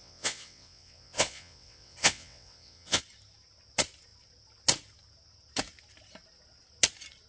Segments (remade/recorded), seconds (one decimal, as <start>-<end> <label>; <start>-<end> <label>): 0.0-3.0 remade; 3.0-7.3 recorded